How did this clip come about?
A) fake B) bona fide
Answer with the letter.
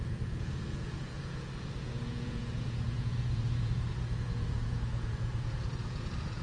A